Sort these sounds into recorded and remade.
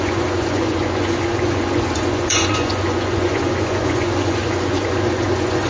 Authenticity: remade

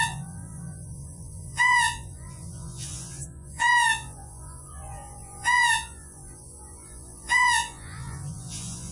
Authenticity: remade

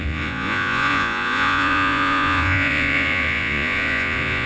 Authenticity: remade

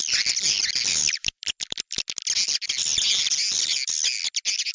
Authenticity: recorded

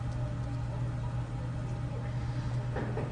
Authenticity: recorded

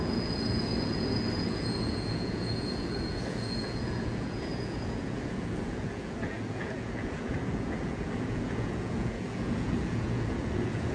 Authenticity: remade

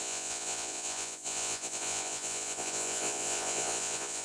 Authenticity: remade